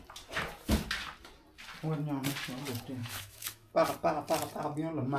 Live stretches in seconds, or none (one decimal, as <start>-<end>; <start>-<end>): 0.0-3.0; 3.7-5.2